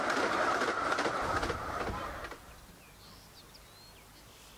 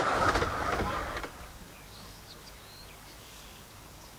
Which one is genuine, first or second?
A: first